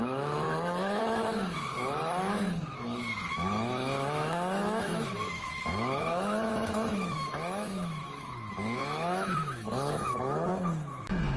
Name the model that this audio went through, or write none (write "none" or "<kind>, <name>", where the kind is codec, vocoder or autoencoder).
autoencoder, DAC-VAE